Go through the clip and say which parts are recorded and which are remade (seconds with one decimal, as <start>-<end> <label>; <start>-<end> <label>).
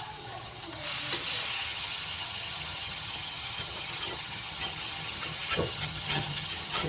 0.0-0.8 remade; 0.8-1.5 recorded; 1.5-6.9 remade